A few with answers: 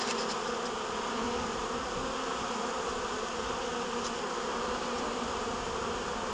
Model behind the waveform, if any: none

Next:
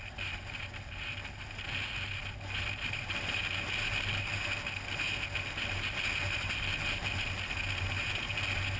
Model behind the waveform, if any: none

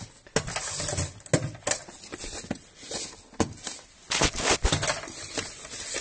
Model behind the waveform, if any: none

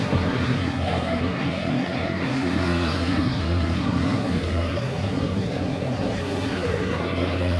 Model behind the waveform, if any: codec, SNAC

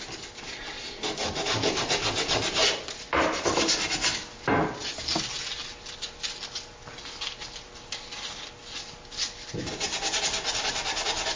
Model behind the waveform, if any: none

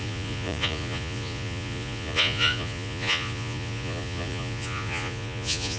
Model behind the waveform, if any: vocoder, Vocos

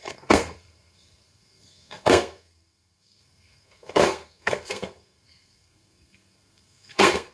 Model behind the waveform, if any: codec, SNAC